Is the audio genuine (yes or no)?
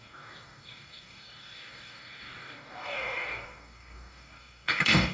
no